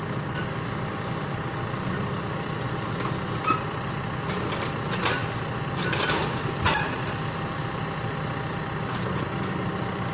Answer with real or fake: real